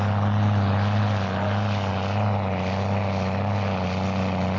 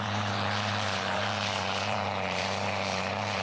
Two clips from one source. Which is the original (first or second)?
first